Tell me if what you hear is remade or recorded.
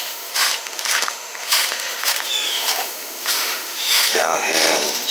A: remade